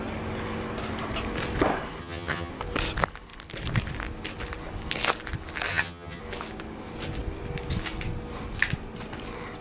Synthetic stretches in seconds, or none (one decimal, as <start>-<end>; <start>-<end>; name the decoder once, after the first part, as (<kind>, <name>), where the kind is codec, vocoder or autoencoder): 2.0-2.5 (vocoder, HiFi-GAN); 5.7-6.2